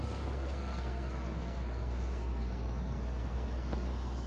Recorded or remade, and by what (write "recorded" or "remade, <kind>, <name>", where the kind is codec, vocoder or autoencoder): remade, codec, SNAC